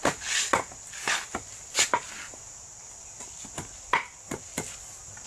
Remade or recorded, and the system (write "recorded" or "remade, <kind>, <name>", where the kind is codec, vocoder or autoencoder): recorded